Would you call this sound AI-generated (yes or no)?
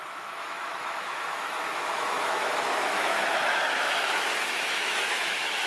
yes